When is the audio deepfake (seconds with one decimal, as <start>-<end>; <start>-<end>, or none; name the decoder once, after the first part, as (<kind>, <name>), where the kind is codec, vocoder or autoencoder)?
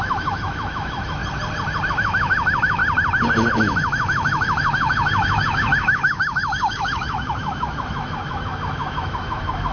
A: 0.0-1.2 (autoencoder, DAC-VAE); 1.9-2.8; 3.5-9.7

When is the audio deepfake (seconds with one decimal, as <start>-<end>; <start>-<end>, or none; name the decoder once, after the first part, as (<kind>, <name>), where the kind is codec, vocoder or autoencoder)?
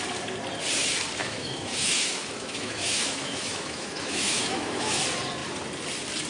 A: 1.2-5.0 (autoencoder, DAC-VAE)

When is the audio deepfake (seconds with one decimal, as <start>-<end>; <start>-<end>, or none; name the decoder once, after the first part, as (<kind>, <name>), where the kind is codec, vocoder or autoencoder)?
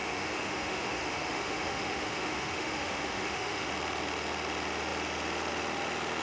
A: 0.0-3.7 (autoencoder, DAC-VAE)